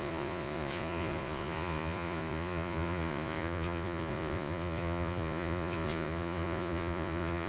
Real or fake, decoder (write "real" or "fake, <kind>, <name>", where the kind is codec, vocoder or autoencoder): fake, vocoder, Vocos